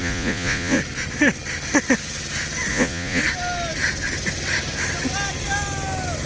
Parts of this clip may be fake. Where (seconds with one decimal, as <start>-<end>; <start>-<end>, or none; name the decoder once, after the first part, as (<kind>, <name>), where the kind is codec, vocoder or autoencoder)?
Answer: 0.0-0.8 (vocoder, Vocos); 2.7-3.2